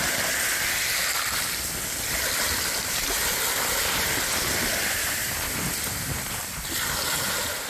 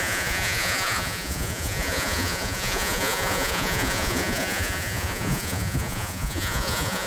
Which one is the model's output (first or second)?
second